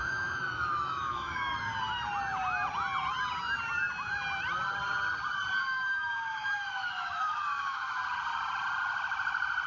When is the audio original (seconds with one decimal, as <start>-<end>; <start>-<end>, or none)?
1.7-5.6; 8.0-9.7